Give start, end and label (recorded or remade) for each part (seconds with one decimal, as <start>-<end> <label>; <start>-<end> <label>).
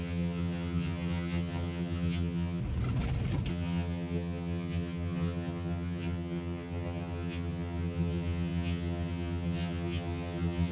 0.0-2.6 remade; 2.6-3.5 recorded; 3.5-10.7 remade